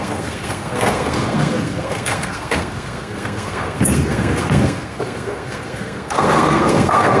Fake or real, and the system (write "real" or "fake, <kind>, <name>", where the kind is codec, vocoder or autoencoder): fake, codec, SNAC